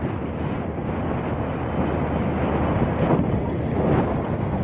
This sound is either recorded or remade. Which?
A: recorded